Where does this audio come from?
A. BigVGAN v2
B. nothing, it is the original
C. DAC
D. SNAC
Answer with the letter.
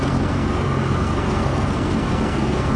D